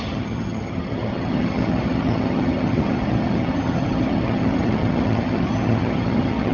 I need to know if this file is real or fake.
fake